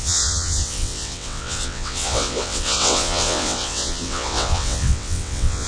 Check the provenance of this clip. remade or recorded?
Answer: remade